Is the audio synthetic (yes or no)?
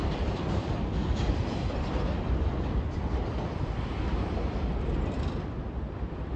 yes